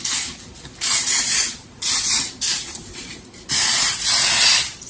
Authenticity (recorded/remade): recorded